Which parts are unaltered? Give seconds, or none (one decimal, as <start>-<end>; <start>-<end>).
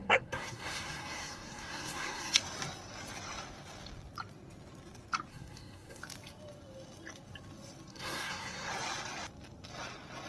2.4-5.3; 6.0-7.9; 8.7-10.3